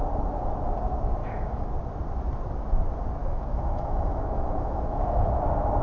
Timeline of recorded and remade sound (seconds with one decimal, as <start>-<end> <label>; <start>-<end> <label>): 0.0-1.2 recorded; 1.2-1.7 remade; 1.7-3.2 recorded; 3.2-5.3 remade; 5.3-5.8 recorded